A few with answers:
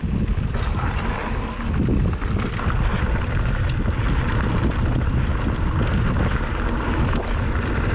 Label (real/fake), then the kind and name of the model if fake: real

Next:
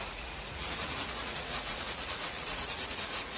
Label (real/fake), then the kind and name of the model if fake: fake, vocoder, Vocos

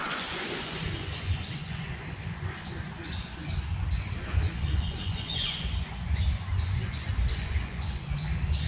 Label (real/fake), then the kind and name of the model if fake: fake, vocoder, Vocos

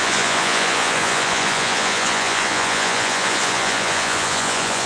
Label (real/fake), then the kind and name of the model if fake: fake, vocoder, Vocos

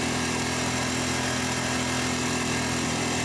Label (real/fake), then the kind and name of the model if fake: real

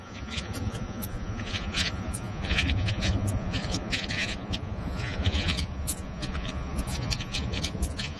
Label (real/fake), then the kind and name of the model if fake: fake, vocoder, Vocos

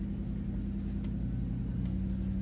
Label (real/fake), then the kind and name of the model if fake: real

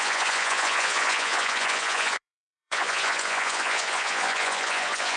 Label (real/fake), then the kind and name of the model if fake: fake, vocoder, Vocos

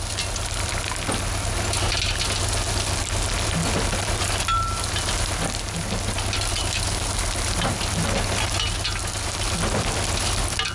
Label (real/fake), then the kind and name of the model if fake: real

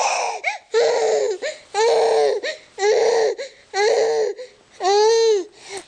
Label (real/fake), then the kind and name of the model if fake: real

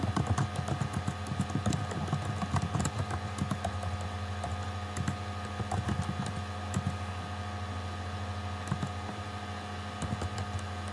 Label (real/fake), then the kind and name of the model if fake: real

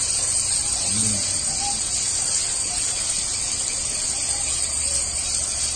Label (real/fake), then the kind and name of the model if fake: real